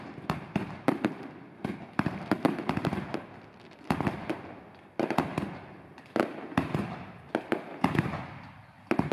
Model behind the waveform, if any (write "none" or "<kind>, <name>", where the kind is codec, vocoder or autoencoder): none